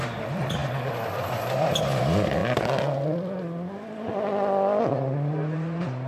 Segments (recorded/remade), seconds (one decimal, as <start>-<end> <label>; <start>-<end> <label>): 0.0-6.1 recorded